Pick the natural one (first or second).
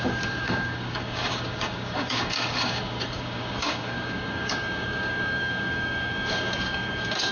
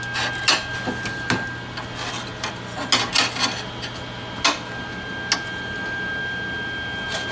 second